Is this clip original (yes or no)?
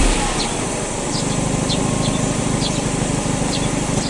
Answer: no